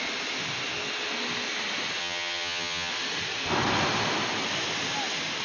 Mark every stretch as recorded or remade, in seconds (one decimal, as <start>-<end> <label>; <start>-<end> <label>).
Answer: 0.0-2.0 recorded; 2.0-2.9 remade; 2.9-5.4 recorded